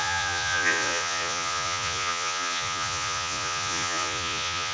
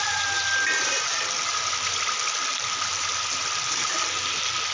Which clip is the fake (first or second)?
first